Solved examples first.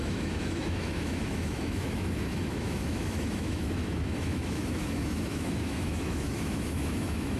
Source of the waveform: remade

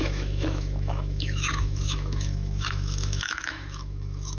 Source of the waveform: remade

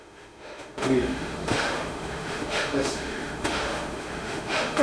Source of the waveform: remade